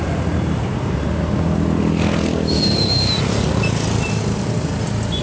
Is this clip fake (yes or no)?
no